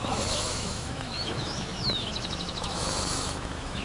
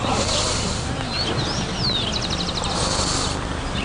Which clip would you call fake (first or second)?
first